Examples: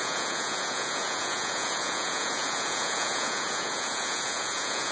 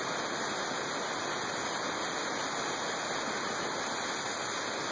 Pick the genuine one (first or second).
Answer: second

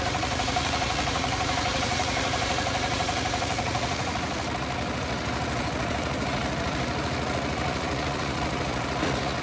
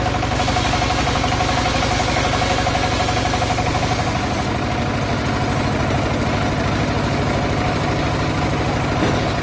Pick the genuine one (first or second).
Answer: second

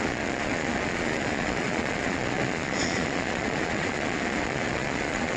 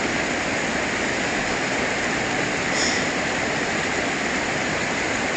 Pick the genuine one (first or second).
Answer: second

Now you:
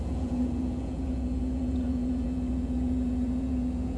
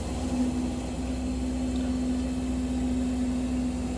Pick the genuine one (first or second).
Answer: second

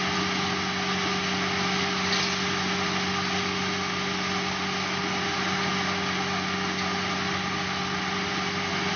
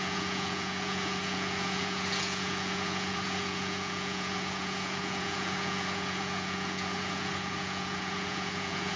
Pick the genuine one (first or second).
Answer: first